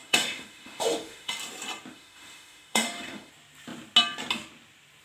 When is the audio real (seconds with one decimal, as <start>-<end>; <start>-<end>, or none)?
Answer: 1.3-1.9; 3.3-5.0